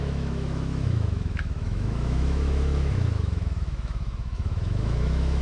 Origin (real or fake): fake